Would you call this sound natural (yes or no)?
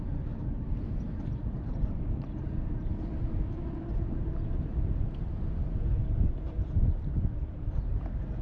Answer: no